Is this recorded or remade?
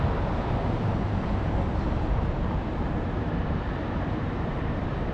remade